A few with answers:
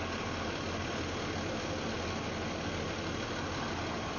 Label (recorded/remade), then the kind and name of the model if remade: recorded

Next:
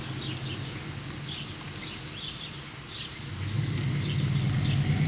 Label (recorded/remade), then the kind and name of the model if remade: recorded